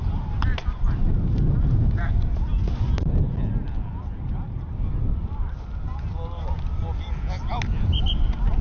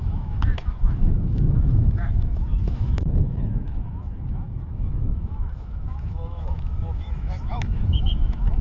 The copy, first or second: second